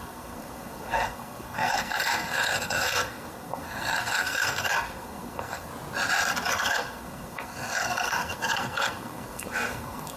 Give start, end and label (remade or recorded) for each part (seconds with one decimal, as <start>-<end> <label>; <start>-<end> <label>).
0.0-5.7 remade; 5.7-6.5 recorded; 6.5-10.2 remade